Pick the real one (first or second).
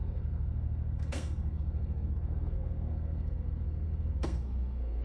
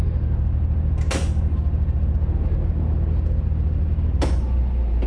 second